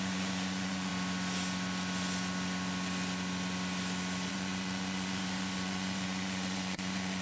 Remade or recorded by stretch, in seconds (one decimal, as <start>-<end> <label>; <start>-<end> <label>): 0.0-0.9 remade; 0.9-4.3 recorded; 4.3-7.2 remade